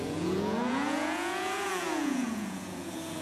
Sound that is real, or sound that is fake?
fake